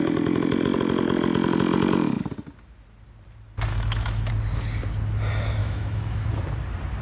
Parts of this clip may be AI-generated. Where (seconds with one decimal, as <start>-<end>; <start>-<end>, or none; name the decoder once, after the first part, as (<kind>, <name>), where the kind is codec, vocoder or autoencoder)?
3.7-4.3 (autoencoder, DAC-VAE); 5.6-6.3